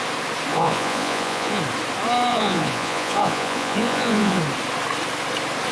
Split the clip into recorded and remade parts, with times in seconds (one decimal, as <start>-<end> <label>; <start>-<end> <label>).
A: 0.0-0.5 recorded; 0.5-1.6 remade; 1.6-2.3 recorded; 2.3-4.4 remade; 4.4-5.7 recorded